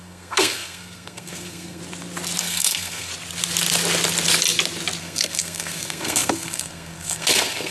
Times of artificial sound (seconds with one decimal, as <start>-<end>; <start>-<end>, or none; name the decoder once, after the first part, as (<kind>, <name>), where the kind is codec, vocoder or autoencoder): 0.0-1.8 (codec, SNAC); 2.4-3.1; 5.0-7.7